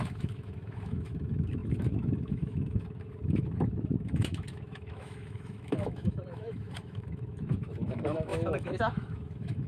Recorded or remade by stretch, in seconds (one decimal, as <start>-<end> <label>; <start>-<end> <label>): 0.0-9.7 remade